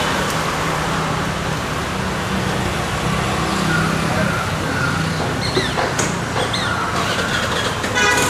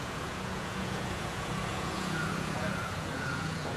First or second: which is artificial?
second